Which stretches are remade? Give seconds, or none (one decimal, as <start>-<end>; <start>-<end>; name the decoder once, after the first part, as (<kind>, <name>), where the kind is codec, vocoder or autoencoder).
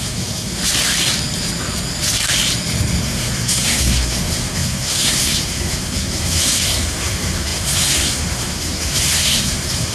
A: 0.0-0.6 (codec, SNAC); 3.0-9.9